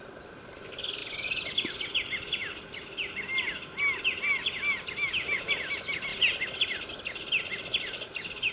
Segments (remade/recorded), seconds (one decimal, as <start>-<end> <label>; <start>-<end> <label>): 0.0-8.5 recorded